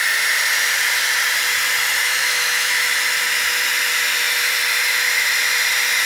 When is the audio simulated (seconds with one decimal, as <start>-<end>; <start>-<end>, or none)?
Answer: 2.0-2.9